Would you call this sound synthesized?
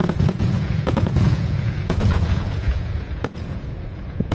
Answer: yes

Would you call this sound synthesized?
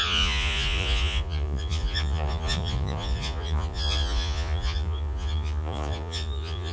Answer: yes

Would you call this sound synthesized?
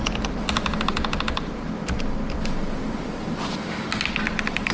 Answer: no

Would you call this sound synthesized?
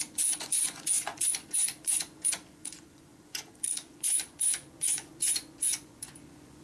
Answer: yes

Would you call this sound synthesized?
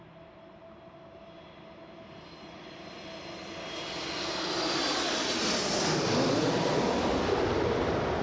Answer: no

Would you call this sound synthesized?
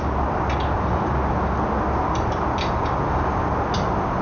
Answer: no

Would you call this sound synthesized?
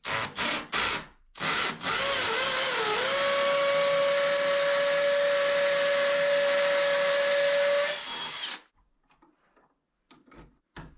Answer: no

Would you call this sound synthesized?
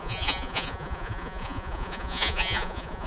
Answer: yes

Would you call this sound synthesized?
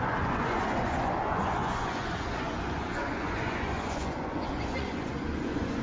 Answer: yes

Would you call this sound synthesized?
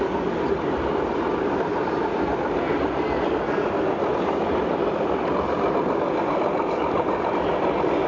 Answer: no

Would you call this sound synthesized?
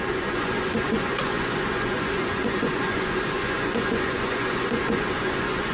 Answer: yes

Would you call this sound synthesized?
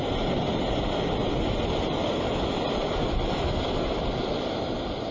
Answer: no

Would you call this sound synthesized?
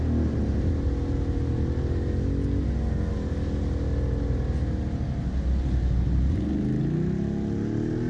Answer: no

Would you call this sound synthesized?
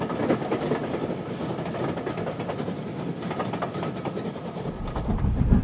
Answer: no